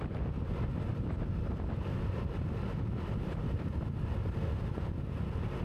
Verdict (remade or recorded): remade